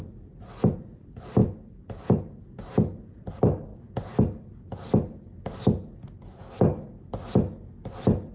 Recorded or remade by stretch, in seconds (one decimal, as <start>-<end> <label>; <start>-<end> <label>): 0.0-8.3 recorded